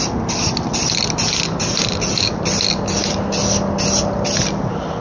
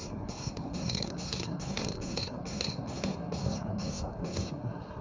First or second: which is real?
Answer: first